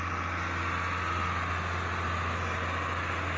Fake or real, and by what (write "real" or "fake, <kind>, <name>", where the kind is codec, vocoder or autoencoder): real